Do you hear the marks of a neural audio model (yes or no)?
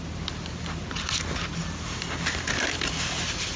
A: no